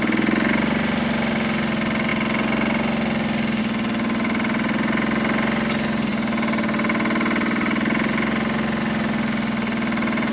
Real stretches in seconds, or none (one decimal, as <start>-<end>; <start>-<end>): 0.0-10.3